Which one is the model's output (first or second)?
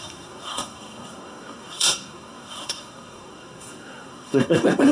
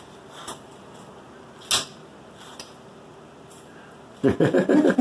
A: first